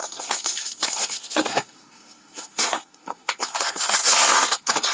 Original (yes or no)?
no